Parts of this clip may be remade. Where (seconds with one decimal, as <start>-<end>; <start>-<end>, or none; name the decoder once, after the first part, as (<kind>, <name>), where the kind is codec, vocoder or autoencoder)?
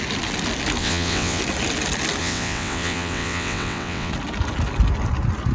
0.8-1.4 (vocoder, WaveNeXt); 2.2-4.1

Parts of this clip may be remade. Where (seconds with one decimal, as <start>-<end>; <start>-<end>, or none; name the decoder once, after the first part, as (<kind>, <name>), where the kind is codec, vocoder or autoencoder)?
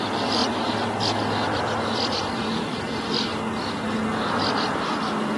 0.0-3.3 (vocoder, BigVGAN v2); 4.1-5.4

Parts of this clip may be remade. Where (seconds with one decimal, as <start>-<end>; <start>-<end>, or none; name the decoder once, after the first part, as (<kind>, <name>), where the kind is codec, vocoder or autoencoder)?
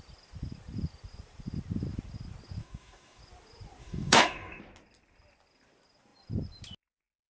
2.6-3.2 (codec, DAC); 3.8-4.6